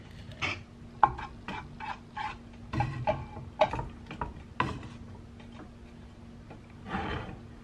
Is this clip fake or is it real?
real